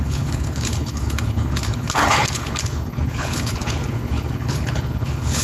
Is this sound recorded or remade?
remade